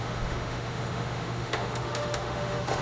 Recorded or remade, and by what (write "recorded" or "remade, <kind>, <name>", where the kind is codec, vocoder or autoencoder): remade, autoencoder, DAC-VAE